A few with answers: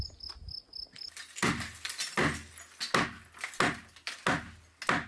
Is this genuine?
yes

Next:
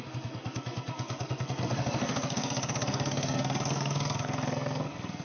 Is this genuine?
no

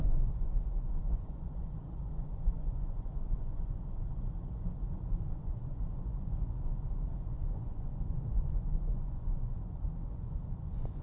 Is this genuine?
no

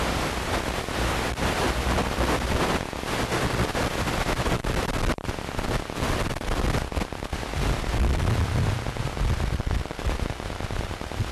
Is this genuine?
yes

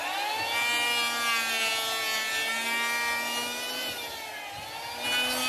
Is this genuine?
yes